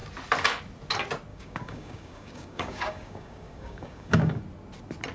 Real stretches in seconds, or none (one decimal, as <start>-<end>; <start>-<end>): 0.0-1.3; 4.4-5.1